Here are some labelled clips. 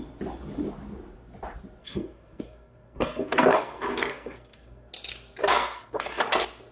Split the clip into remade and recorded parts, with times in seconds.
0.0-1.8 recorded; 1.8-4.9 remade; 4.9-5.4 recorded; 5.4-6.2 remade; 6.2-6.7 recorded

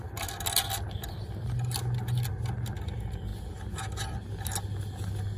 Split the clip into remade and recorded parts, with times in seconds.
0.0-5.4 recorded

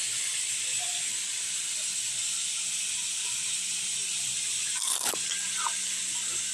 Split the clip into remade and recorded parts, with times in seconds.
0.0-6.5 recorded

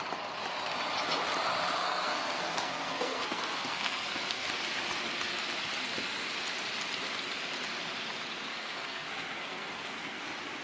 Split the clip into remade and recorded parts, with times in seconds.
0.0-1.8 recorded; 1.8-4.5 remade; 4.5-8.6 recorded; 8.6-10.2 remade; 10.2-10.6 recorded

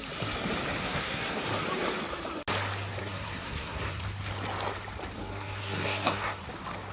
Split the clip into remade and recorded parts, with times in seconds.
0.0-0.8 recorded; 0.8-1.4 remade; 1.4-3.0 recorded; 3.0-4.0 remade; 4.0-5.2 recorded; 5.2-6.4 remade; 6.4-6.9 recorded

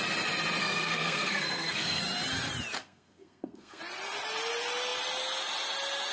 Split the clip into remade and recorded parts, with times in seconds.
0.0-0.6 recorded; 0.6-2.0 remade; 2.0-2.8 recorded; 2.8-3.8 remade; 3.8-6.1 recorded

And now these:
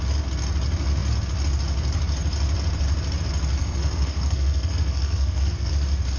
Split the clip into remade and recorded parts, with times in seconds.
0.0-3.6 recorded; 3.6-5.7 remade; 5.7-6.2 recorded

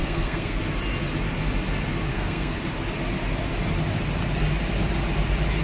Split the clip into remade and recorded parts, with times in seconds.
0.0-0.6 remade; 0.6-2.1 recorded; 2.1-2.6 remade; 2.6-5.6 recorded